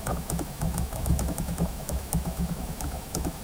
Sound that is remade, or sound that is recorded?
remade